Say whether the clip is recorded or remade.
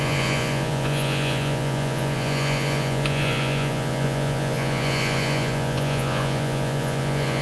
remade